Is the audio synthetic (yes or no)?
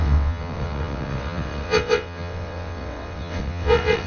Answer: yes